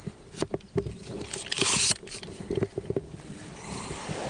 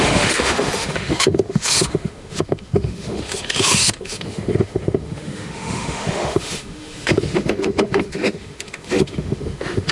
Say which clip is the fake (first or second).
second